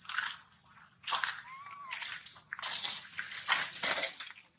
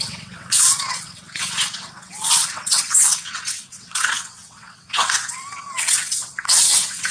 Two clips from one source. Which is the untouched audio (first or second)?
first